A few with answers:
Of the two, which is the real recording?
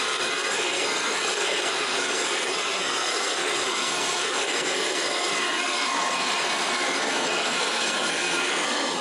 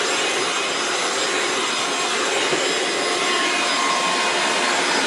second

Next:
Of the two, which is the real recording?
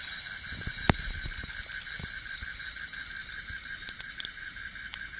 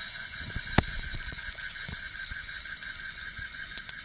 first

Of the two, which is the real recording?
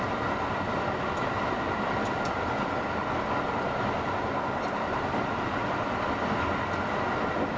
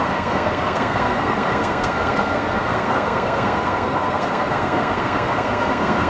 first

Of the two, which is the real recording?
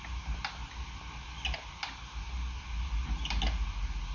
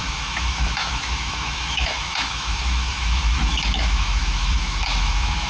first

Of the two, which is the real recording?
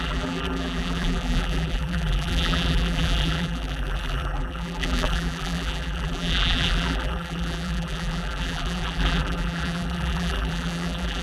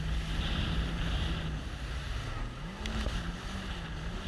second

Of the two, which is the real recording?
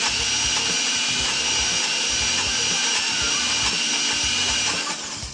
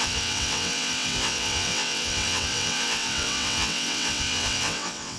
first